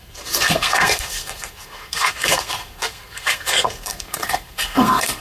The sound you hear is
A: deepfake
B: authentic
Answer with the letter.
A